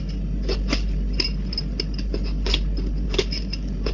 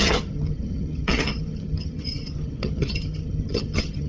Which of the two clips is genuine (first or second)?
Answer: first